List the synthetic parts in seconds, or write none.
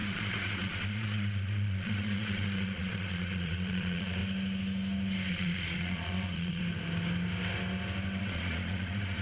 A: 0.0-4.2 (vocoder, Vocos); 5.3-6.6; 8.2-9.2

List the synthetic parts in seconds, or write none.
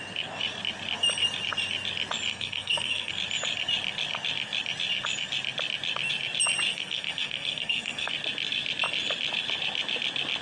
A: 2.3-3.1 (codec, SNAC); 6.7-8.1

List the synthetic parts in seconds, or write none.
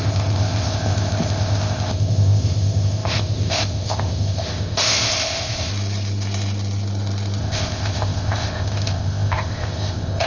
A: 0.0-5.7 (codec, ZipCodec); 7.4-10.3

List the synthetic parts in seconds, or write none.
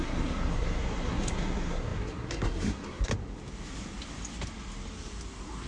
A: 0.0-3.1 (codec, SNAC)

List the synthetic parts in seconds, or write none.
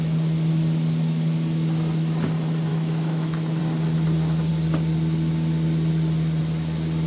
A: 2.7-3.6 (autoencoder, DAC-VAE)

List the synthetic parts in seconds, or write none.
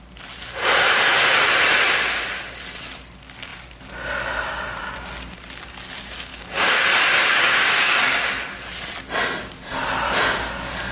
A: 6.3-6.8 (codec, DAC); 7.2-8.3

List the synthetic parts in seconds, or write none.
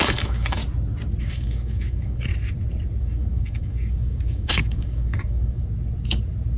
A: 0.0-0.6 (codec, DAC); 1.2-2.3; 3.0-5.6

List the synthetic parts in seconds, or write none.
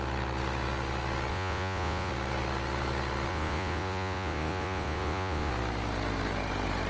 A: 1.3-2.1 (vocoder, Vocos); 3.3-5.5